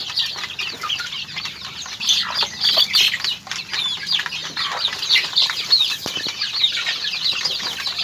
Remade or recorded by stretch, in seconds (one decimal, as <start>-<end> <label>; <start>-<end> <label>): 0.0-8.0 recorded